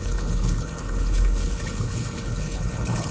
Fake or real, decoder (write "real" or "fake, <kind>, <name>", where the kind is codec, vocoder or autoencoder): fake, codec, HILCodec